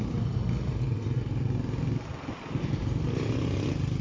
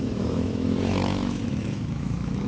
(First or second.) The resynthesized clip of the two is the second